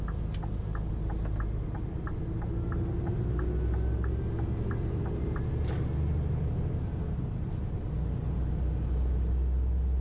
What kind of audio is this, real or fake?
real